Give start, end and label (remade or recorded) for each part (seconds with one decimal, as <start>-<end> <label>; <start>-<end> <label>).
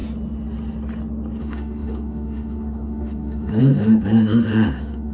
0.0-1.4 recorded; 1.4-5.1 remade